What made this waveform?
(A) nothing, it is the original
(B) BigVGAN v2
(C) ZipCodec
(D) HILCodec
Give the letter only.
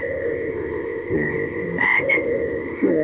C